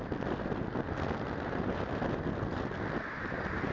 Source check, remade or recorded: recorded